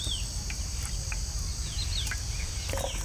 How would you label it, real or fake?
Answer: real